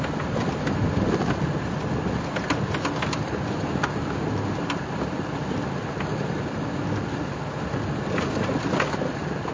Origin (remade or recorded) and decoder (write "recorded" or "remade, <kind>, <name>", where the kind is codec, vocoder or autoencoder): recorded